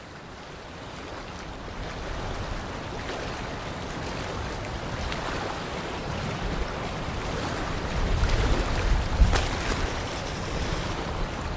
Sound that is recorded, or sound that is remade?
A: recorded